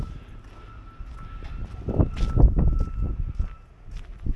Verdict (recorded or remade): recorded